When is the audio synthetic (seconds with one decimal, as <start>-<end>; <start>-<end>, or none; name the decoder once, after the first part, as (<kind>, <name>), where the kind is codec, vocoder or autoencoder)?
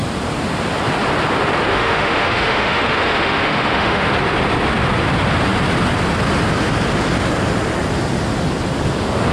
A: 1.7-4.1 (autoencoder, DAC-VAE)